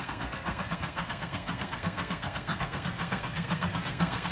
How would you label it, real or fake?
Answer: fake